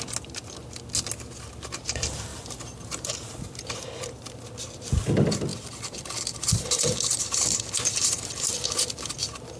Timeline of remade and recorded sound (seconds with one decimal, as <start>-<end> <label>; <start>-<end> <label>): 0.0-2.3 recorded; 2.3-3.1 remade; 3.1-5.5 recorded; 5.5-7.2 remade; 7.2-9.6 recorded